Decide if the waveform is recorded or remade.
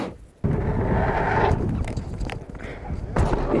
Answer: recorded